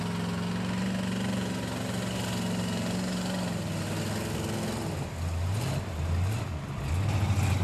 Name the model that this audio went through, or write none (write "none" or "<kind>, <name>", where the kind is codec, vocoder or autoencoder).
none